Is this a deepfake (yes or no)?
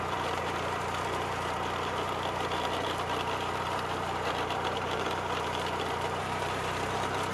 yes